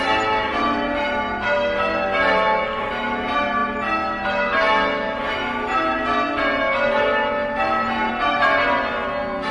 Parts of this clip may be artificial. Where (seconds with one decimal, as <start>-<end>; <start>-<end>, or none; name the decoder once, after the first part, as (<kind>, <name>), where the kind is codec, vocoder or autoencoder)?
none